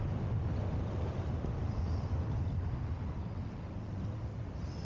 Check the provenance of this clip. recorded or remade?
recorded